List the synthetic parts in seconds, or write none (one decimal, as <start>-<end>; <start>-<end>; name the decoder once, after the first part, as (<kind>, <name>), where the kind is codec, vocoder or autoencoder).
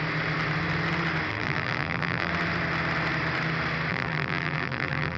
1.3-2.3 (vocoder, BigVGAN v2); 3.9-5.2